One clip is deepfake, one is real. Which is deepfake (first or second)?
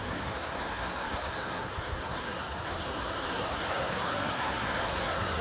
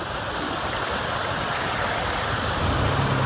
first